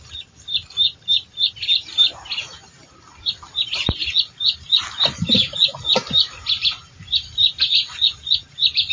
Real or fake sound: real